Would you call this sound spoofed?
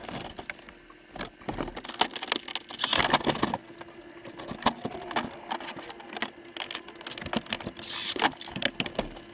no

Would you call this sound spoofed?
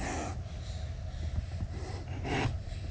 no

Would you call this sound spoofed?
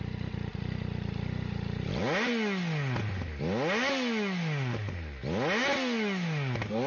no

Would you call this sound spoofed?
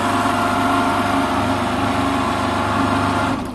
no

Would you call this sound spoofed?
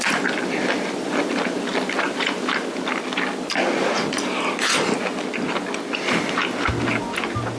no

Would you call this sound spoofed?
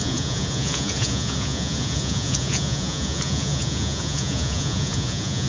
yes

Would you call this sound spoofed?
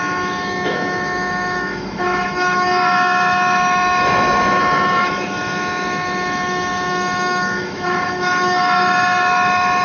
yes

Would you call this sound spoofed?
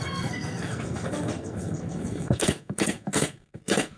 yes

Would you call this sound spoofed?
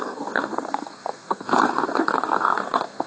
yes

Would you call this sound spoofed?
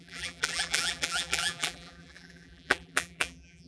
yes